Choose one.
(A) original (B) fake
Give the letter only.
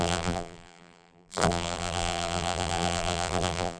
B